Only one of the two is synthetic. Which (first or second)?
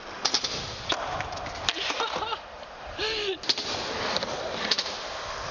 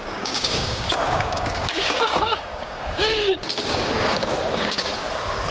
second